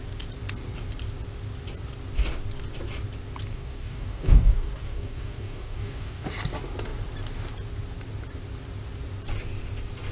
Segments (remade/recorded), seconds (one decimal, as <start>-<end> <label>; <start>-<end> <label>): 0.0-3.5 recorded; 3.5-6.2 remade; 6.2-10.1 recorded